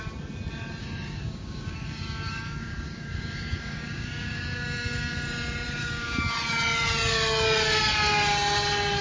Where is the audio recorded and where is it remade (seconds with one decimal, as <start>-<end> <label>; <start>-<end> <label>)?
0.0-0.8 recorded; 0.8-5.1 remade; 5.1-5.8 recorded; 5.8-6.3 remade; 6.3-9.0 recorded